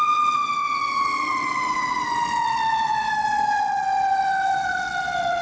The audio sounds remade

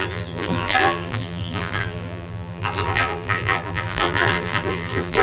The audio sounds remade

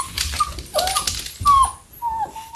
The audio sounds recorded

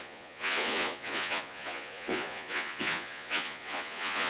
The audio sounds remade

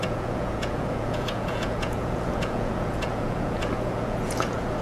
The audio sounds remade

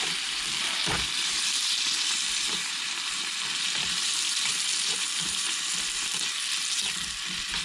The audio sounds remade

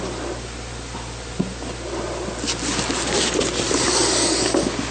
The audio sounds recorded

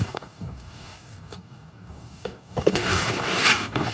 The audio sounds remade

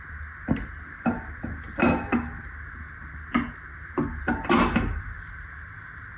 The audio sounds recorded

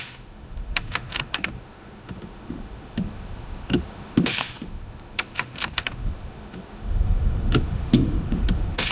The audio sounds remade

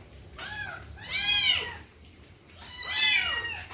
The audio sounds remade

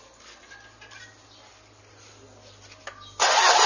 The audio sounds recorded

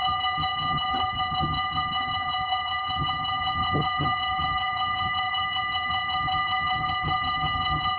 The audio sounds remade